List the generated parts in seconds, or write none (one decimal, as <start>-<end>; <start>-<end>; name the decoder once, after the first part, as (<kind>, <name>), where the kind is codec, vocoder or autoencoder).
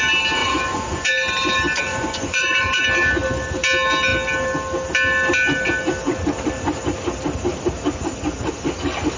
0.4-1.1 (vocoder, Vocos); 1.9-2.8